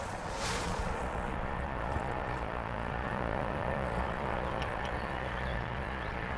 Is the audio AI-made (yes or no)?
yes